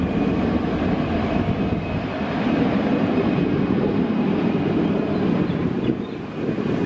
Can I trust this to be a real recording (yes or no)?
yes